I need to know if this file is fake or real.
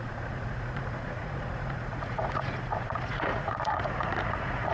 fake